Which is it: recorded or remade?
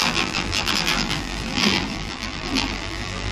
remade